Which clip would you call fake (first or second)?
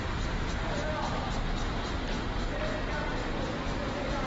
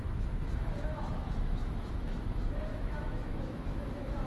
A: second